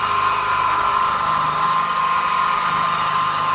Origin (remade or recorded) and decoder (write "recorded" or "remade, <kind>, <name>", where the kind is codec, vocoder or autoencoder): recorded